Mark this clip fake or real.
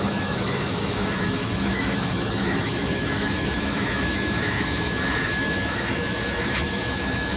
fake